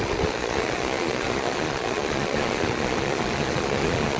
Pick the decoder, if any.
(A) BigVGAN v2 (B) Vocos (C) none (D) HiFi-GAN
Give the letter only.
B